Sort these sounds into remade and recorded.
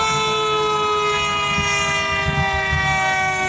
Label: recorded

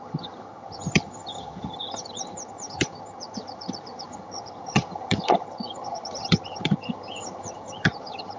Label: remade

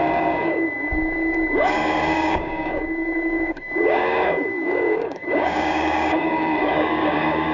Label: remade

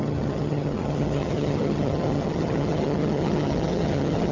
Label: remade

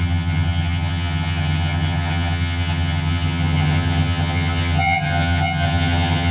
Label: remade